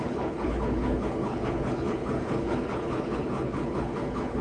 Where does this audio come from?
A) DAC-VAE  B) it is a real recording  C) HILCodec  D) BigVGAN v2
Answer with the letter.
C